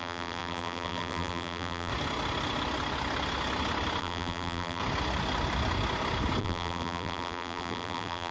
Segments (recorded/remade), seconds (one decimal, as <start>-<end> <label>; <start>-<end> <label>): 0.0-1.9 remade; 1.9-4.0 recorded; 4.0-4.8 remade; 4.8-6.4 recorded; 6.4-8.3 remade